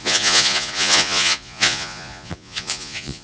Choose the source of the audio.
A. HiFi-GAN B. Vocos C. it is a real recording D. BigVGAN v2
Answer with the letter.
B